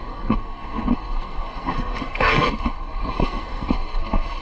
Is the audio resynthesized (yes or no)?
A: yes